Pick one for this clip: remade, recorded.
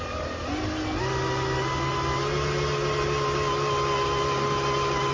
recorded